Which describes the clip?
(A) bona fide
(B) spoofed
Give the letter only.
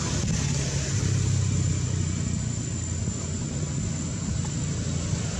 A